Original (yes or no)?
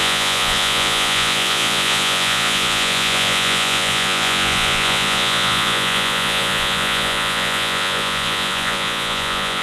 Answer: no